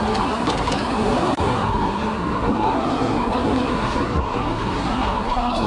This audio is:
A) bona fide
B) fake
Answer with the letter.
B